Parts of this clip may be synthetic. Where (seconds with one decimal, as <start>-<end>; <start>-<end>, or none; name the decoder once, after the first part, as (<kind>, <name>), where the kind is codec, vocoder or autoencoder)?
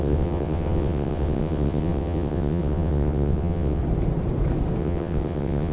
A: 0.0-3.8 (vocoder, WaveNeXt); 4.8-5.7